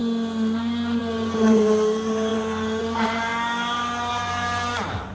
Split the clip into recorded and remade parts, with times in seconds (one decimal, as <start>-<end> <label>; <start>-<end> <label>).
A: 0.0-1.0 recorded; 1.0-3.3 remade; 3.3-4.1 recorded; 4.1-5.1 remade